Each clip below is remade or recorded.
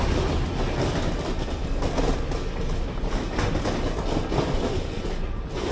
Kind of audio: recorded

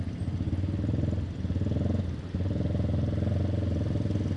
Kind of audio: recorded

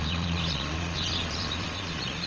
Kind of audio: remade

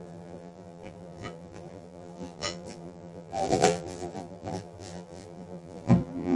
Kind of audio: remade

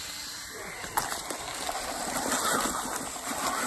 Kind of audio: recorded